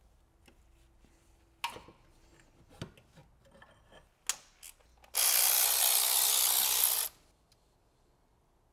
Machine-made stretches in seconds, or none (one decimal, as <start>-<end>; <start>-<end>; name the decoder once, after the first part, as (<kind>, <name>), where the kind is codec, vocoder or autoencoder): none